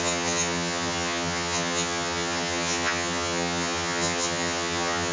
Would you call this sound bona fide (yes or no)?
no